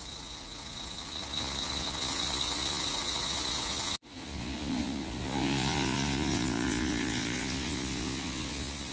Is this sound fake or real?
fake